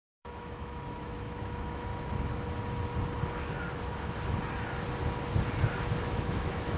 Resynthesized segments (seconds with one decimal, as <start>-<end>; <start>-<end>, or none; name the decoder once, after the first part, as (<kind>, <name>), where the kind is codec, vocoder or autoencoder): 0.0-1.9 (autoencoder, DAC-VAE); 6.0-6.8